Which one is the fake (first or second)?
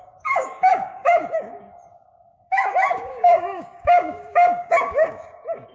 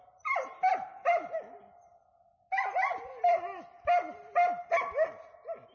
first